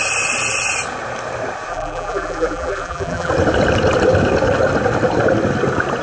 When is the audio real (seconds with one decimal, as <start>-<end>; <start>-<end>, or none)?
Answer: 0.0-1.7; 3.3-6.0